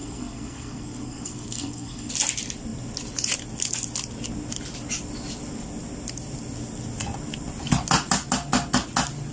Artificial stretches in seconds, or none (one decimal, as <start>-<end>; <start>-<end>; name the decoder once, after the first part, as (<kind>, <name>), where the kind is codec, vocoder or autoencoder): 0.0-2.1 (codec, SNAC)